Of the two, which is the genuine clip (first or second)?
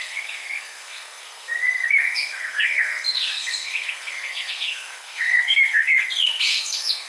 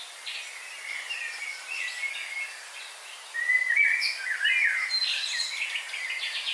second